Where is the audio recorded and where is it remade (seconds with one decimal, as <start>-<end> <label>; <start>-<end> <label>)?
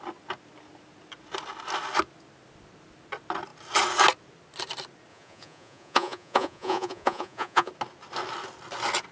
0.0-5.1 recorded; 5.1-7.7 remade; 7.7-9.1 recorded